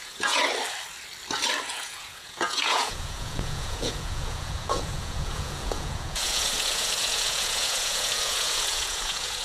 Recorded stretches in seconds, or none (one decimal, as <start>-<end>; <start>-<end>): 0.4-1.7